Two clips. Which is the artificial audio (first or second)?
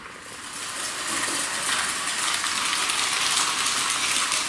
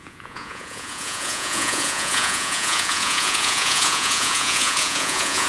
second